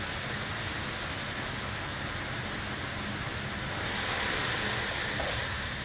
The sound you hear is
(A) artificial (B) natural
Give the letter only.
B